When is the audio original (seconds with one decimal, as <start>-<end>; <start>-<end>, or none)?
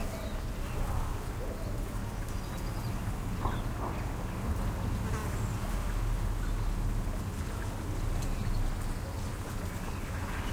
0.0-10.5